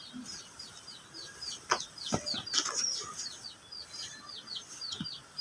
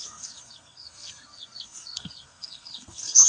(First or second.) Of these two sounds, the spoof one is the second